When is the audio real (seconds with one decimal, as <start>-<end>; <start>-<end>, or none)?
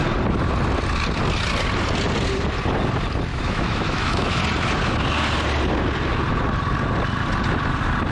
0.0-3.3; 4.4-8.1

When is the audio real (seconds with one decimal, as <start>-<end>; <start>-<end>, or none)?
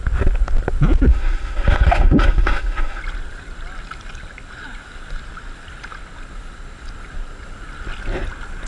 0.0-1.1; 3.0-8.7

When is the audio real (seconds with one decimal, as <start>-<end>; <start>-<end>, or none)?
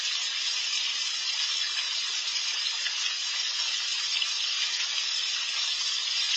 0.0-6.4